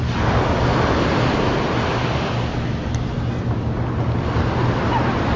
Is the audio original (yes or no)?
yes